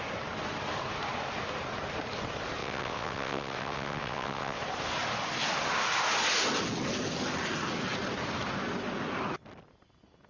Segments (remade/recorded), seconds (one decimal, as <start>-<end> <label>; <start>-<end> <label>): 0.0-2.6 recorded; 2.6-4.6 remade; 4.6-10.3 recorded